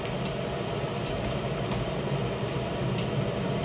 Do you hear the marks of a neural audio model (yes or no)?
no